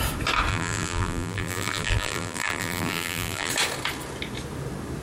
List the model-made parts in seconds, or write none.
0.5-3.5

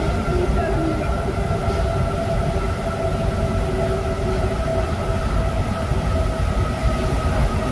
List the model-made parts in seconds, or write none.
4.7-6.0

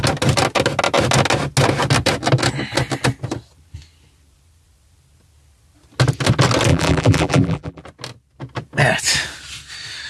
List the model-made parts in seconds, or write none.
6.7-7.8

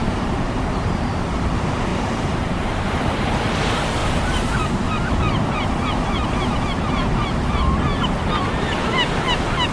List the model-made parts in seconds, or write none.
0.0-1.1; 1.9-3.3; 4.0-4.5